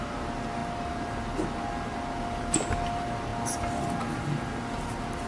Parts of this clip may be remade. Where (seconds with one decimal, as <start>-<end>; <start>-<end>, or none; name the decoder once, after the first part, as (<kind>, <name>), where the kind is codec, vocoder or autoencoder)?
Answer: none